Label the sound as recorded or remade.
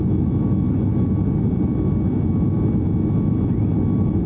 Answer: recorded